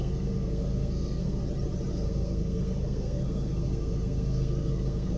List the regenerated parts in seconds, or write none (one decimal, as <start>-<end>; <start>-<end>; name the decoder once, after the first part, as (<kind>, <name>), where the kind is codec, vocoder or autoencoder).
0.0-1.4 (codec, SNAC); 1.9-5.2